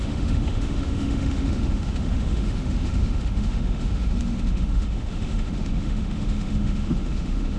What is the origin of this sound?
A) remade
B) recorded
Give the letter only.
A